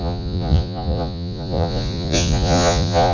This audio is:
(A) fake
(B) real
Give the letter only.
A